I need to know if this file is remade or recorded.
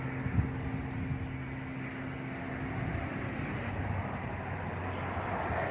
recorded